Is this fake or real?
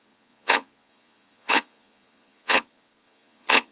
fake